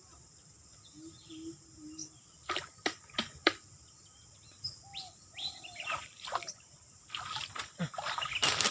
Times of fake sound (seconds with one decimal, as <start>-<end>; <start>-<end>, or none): 2.0-7.1